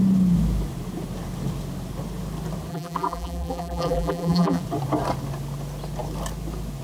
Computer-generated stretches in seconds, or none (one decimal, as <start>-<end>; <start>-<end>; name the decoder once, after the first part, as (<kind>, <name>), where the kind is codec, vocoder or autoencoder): 2.7-4.6 (vocoder, BigVGAN v2)